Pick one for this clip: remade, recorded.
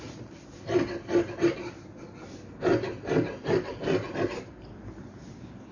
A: recorded